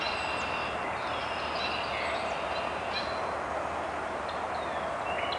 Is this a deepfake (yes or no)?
no